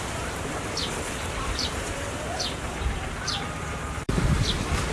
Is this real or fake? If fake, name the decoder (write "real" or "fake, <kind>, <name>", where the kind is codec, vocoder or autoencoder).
fake, vocoder, BigVGAN v2